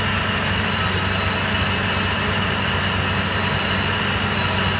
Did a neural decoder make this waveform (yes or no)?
no